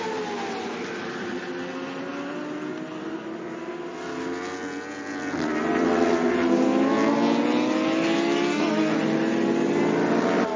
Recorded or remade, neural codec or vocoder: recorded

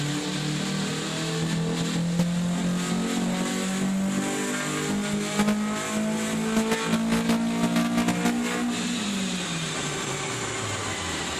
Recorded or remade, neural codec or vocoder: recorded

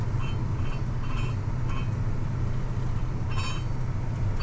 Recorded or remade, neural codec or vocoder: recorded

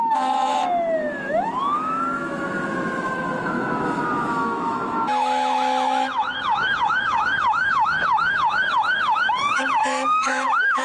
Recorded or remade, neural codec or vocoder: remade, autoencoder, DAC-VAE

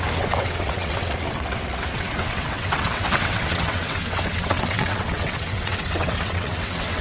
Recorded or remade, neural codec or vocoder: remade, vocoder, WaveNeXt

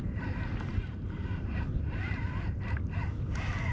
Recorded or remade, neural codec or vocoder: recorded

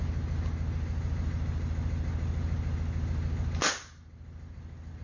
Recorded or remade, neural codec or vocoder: recorded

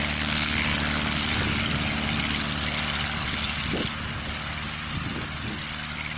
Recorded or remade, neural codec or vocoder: recorded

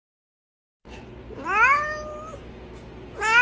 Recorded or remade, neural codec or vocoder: recorded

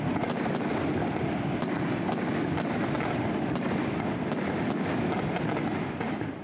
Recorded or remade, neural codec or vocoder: recorded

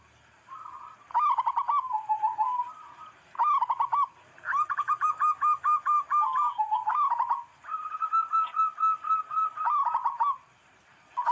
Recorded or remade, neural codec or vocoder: recorded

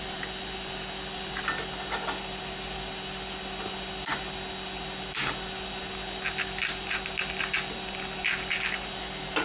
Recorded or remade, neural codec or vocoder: recorded